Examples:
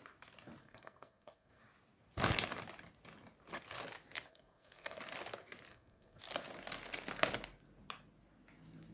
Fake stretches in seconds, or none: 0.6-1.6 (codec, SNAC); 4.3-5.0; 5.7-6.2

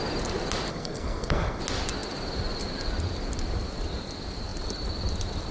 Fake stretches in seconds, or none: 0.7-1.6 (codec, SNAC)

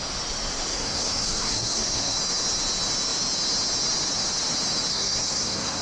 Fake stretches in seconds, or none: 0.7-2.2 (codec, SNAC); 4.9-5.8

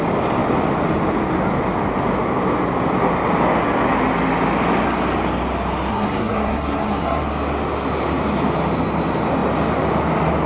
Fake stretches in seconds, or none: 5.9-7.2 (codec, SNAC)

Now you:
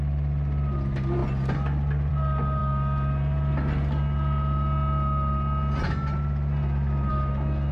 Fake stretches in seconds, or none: none

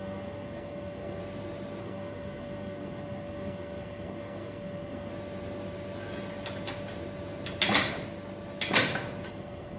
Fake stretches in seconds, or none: 0.0-1.2 (codec, SNAC); 1.8-5.1; 9.3-9.8

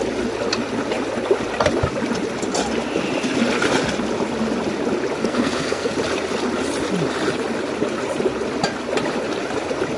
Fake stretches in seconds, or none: 5.2-5.9 (codec, SNAC)

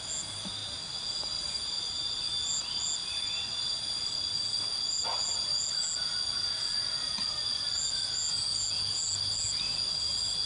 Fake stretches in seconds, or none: none